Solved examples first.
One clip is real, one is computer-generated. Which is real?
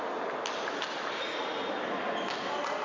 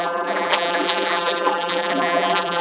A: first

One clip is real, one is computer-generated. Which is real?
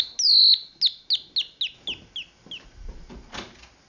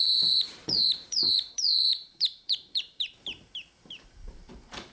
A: first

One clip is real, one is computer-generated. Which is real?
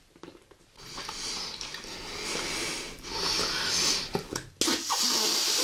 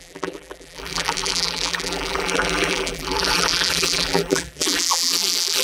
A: first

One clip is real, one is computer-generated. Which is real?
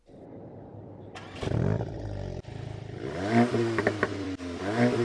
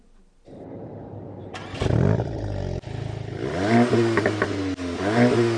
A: second